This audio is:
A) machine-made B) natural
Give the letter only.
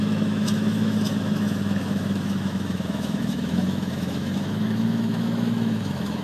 A